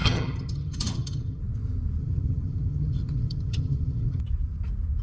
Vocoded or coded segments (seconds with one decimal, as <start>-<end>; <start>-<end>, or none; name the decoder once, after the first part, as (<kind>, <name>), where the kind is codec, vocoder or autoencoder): 0.0-1.4 (vocoder, HiFi-GAN); 2.0-4.2

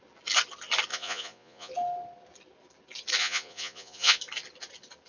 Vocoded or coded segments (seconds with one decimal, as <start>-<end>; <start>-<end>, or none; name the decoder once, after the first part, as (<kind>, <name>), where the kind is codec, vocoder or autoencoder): 0.9-1.7 (vocoder, Vocos); 3.2-4.2